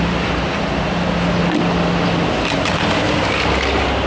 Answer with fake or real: real